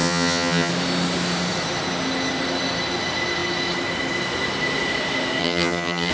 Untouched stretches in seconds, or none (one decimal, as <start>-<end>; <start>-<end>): 0.7-5.4